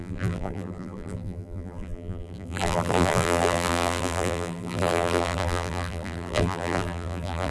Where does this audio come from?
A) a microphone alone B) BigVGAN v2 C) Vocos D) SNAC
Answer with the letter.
B